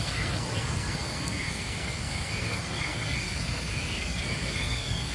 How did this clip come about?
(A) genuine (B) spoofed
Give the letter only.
B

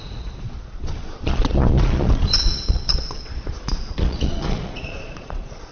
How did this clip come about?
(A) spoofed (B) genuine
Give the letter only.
A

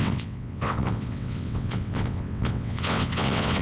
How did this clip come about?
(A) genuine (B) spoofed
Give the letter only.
B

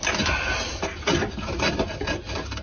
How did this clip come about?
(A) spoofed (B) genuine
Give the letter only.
B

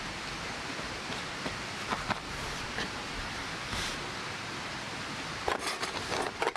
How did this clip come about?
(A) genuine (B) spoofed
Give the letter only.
A